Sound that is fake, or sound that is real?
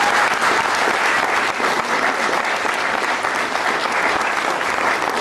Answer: real